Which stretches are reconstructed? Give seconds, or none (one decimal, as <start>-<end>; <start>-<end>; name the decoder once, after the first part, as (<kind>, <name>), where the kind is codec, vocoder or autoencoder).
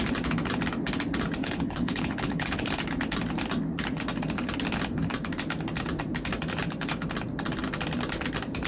1.4-2.7 (codec, HILCodec)